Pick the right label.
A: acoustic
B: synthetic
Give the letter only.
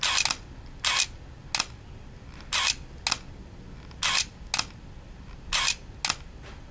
A